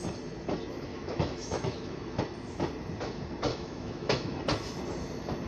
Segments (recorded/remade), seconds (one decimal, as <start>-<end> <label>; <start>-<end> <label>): 0.0-0.9 recorded; 0.9-2.2 remade; 2.2-3.5 recorded; 3.5-4.4 remade; 4.4-5.5 recorded